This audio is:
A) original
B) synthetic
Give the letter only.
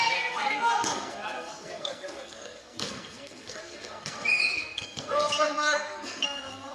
B